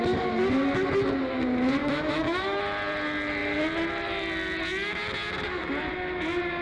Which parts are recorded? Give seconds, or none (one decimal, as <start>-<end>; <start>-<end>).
0.0-1.8; 2.6-6.6